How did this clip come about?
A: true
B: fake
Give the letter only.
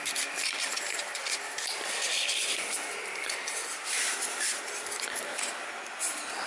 B